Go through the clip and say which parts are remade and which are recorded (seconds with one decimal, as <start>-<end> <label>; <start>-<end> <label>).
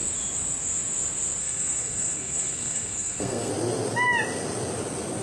0.0-1.4 recorded; 1.4-3.5 remade; 3.5-5.2 recorded